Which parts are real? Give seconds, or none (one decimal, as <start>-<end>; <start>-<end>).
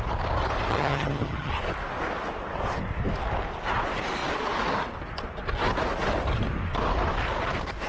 0.0-0.7; 1.5-7.9